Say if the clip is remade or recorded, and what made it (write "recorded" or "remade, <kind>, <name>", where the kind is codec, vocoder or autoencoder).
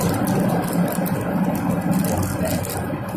recorded